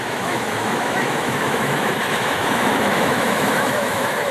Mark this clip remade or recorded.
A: remade